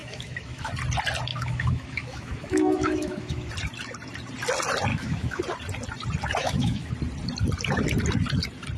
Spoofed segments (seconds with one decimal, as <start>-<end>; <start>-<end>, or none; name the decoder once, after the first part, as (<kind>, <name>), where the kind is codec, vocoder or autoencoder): 0.0-0.7 (autoencoder, DAC-VAE); 1.3-3.5; 4.9-5.4; 6.4-6.9